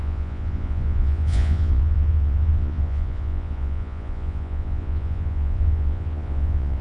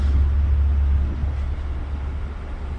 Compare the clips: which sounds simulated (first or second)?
first